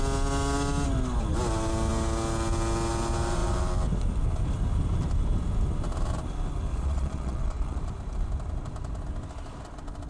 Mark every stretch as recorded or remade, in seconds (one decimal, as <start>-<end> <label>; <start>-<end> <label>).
0.0-6.7 recorded; 6.7-7.8 remade; 7.8-10.1 recorded